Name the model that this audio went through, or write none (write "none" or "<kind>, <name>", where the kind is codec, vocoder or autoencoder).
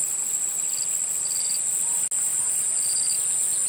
none